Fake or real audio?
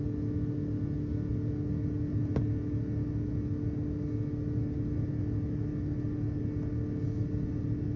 real